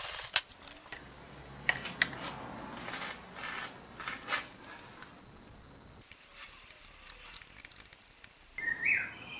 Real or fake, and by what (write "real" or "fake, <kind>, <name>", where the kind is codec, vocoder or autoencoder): real